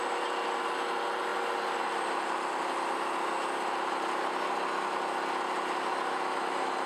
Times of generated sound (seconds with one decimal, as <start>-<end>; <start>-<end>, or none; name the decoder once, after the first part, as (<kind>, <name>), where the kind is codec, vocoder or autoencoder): none